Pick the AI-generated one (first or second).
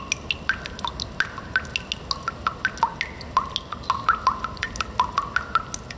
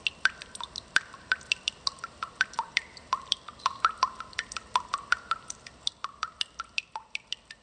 second